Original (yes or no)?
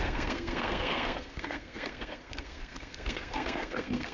no